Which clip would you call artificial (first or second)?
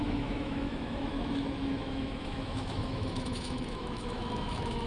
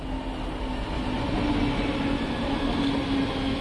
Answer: first